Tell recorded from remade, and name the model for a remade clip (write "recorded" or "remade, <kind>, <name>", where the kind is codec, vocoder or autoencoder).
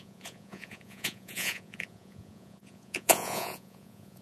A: remade, vocoder, Vocos